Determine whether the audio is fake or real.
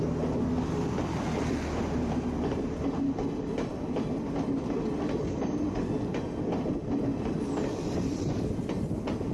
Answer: real